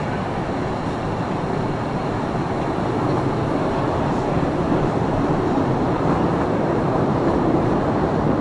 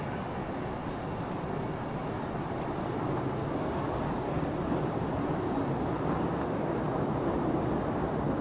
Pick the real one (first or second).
second